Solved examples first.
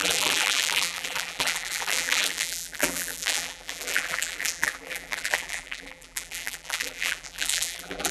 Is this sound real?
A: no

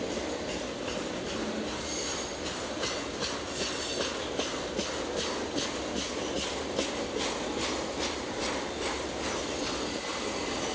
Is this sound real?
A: yes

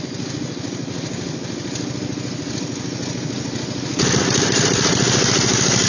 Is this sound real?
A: yes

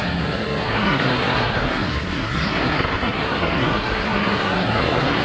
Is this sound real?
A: no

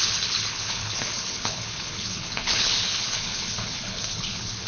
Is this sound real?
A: no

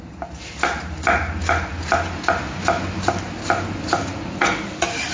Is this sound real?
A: yes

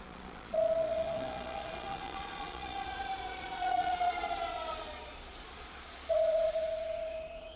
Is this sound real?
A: no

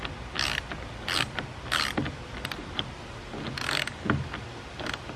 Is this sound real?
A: yes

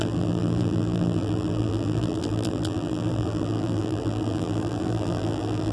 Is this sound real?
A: no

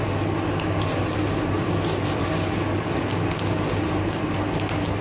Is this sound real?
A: yes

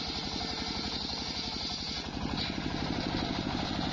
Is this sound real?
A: yes